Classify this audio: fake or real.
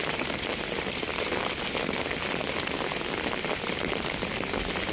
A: real